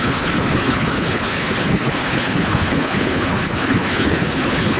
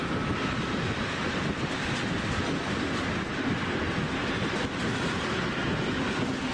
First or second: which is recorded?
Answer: second